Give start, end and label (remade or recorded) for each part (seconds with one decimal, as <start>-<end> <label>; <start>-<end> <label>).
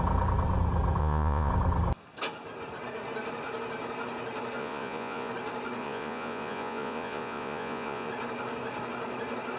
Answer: 0.0-1.0 recorded; 1.0-1.5 remade; 1.5-4.6 recorded; 4.6-5.3 remade; 5.3-5.8 recorded; 5.8-8.1 remade; 8.1-9.6 recorded